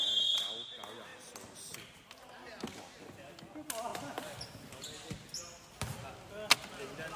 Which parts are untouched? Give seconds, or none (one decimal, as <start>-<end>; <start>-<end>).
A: 0.0-7.2